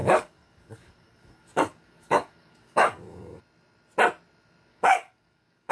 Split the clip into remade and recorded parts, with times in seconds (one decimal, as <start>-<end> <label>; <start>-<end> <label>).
0.0-3.4 remade; 3.4-4.7 recorded; 4.7-5.7 remade